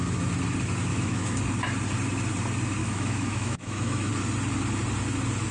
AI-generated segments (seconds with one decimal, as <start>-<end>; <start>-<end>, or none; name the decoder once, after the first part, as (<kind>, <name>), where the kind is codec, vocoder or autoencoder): 0.9-1.4 (autoencoder, DAC-VAE); 2.8-4.1